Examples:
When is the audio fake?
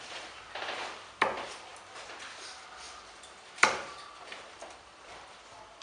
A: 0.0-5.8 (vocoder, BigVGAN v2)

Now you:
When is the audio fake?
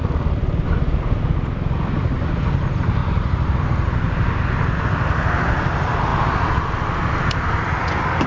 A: 3.0-3.5 (vocoder, BigVGAN v2)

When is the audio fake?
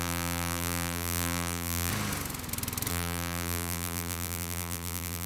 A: 0.0-1.9 (vocoder, BigVGAN v2); 2.9-5.3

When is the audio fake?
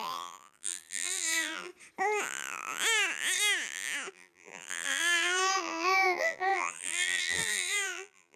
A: 0.0-1.7 (vocoder, BigVGAN v2); 4.1-8.4